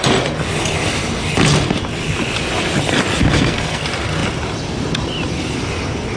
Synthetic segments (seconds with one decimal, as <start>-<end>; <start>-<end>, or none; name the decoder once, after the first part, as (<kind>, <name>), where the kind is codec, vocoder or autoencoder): 3.2-3.8 (codec, SNAC)